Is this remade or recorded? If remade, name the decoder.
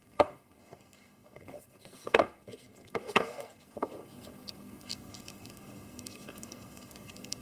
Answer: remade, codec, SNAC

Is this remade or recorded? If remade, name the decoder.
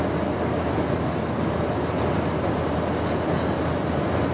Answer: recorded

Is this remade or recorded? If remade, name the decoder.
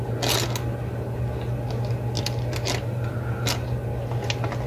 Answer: recorded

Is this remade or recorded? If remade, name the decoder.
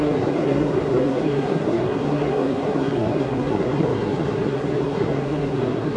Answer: remade, codec, SNAC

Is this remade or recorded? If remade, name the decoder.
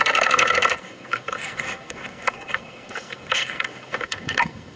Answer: remade, codec, SNAC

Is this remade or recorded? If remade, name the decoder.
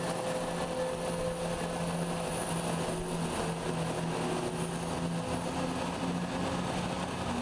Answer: recorded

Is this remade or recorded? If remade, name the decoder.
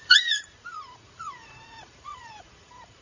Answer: remade, vocoder, Vocos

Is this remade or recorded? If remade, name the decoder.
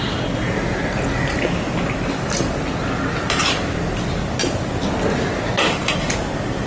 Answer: recorded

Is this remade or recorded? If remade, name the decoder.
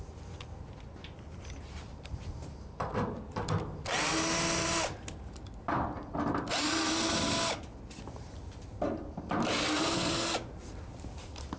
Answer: recorded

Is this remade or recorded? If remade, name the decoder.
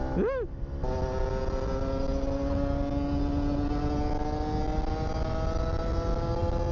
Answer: recorded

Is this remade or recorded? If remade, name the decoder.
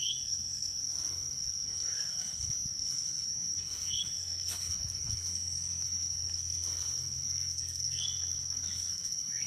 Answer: remade, codec, SNAC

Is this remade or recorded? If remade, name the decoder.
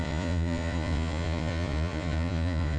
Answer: remade, vocoder, Vocos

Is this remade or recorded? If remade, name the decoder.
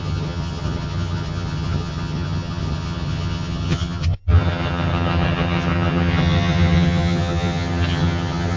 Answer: remade, vocoder, HiFi-GAN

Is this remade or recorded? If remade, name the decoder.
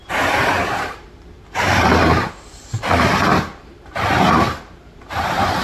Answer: remade, vocoder, BigVGAN v2